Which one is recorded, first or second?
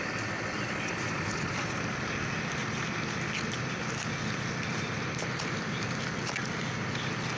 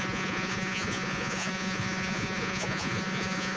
first